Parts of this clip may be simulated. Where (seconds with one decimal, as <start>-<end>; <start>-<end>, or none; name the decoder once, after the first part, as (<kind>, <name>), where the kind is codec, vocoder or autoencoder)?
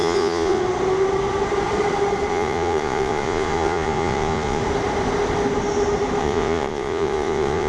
0.0-0.6 (vocoder, Vocos); 2.3-4.6; 6.2-7.7